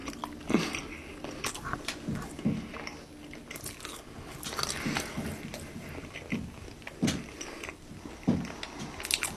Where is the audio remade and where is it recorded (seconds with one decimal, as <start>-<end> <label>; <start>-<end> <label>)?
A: 0.0-9.4 recorded